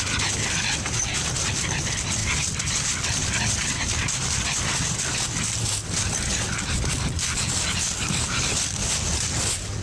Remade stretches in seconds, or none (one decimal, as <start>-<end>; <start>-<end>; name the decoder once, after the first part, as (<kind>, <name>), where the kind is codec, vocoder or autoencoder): none

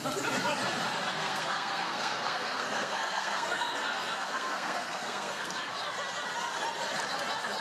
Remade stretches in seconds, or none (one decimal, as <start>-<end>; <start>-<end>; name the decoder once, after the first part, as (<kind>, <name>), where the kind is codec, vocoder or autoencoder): 1.1-5.7 (codec, SNAC)

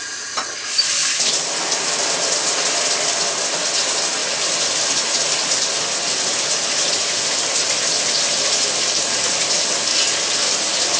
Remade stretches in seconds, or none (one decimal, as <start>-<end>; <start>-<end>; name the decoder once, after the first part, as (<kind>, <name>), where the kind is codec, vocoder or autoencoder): 0.0-1.0 (vocoder, BigVGAN v2); 1.8-9.9; 10.6-11.0

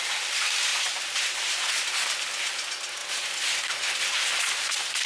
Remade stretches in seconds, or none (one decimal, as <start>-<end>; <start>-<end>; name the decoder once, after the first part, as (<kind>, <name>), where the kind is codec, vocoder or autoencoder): 0.7-1.9 (vocoder, BigVGAN v2); 3.0-3.5